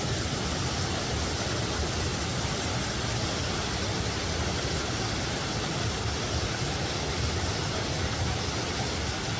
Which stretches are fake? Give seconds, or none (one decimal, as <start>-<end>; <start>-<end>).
none